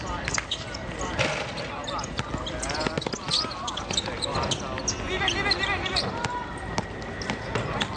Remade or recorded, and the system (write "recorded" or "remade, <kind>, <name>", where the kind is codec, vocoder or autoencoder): recorded